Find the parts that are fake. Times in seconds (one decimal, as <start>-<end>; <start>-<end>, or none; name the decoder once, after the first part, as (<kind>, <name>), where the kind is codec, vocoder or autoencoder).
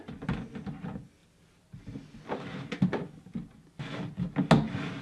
none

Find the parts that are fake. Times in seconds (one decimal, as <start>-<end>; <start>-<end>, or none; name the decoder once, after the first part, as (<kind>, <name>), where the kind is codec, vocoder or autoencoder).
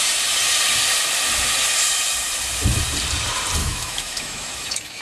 3.6-5.0 (autoencoder, DAC-VAE)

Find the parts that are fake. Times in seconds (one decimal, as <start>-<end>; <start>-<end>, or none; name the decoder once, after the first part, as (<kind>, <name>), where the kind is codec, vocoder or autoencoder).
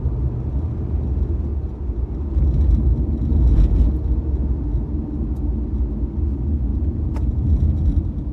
1.5-2.1 (vocoder, Vocos); 3.3-3.9; 6.7-7.5